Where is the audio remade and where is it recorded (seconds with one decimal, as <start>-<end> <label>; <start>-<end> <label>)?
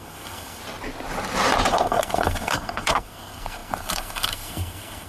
0.0-0.6 remade; 0.6-1.7 recorded; 1.7-5.1 remade